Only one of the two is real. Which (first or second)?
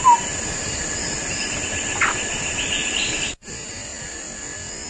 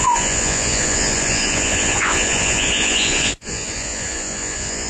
first